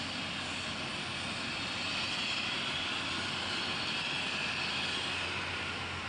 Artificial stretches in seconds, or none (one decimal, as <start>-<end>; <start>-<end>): none